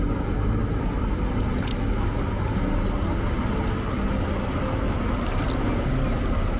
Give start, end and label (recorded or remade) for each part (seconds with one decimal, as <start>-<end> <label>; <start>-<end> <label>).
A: 0.0-6.6 recorded